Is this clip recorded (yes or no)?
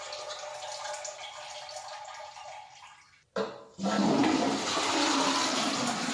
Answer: yes